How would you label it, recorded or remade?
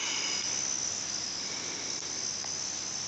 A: recorded